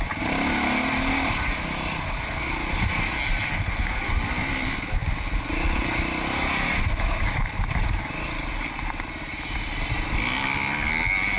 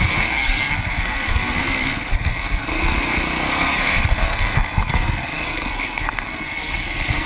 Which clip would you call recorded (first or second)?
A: first